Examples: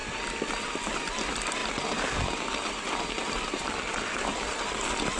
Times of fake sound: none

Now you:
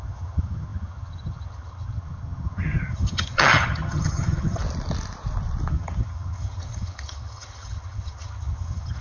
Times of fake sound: 0.0-4.6 (vocoder, HiFi-GAN); 5.7-9.0

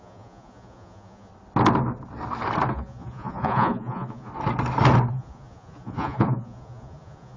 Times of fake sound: 0.0-1.3 (vocoder, Vocos); 2.7-4.3; 5.1-7.4

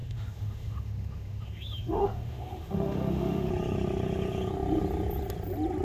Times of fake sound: 0.0-3.5 (autoencoder, DAC-VAE)

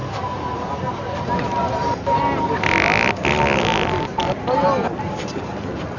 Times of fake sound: none

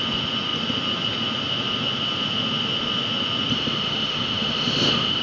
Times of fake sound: 3.5-5.2 (autoencoder, DAC-VAE)